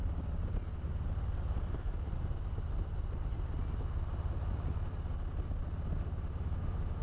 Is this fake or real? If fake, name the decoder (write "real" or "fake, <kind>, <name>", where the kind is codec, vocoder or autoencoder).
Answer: real